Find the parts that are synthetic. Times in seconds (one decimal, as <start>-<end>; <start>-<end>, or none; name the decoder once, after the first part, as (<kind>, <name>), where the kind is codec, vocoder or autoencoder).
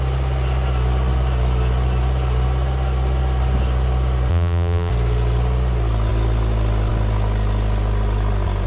4.3-4.9 (vocoder, BigVGAN v2)